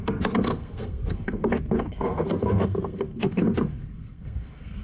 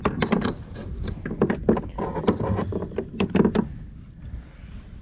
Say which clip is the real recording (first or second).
second